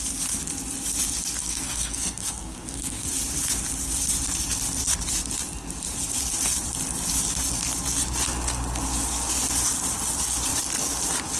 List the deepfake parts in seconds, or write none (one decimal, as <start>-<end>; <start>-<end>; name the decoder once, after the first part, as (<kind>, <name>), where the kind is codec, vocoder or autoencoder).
1.4-3.1 (codec, SNAC)